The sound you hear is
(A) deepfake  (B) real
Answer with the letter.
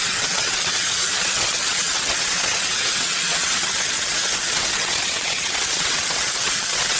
A